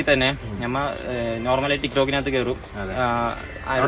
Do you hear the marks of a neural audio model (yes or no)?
no